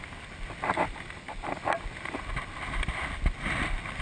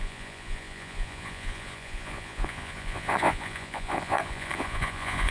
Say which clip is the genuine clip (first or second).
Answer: first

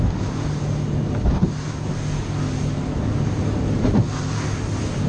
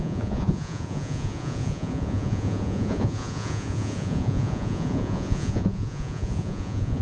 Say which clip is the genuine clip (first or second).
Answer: first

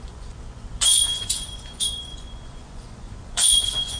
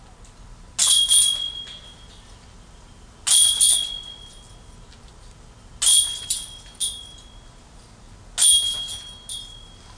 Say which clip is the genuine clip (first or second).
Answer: second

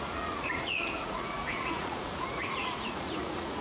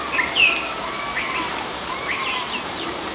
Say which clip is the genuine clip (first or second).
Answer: second